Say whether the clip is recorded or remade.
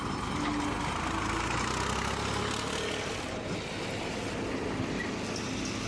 recorded